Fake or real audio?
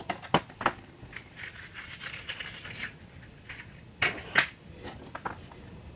real